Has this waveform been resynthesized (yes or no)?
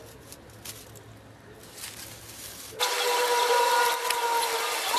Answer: no